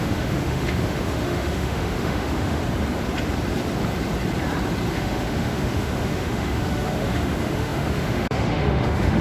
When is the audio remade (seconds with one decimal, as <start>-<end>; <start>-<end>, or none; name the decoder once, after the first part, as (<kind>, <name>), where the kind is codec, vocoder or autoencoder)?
0.0-2.6 (autoencoder, DAC-VAE); 4.9-9.2